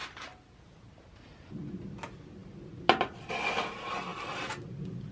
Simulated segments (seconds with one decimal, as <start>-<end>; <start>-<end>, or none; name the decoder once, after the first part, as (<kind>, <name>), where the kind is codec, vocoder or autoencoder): 0.0-1.2 (vocoder, BigVGAN v2); 4.1-5.1